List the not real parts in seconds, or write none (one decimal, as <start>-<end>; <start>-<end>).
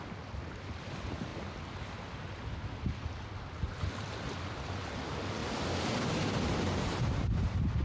none